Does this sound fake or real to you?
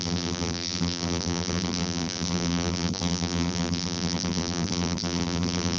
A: fake